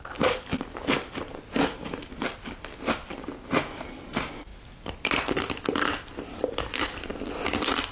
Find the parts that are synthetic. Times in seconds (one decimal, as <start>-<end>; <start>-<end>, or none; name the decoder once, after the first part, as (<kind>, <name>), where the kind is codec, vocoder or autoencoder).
none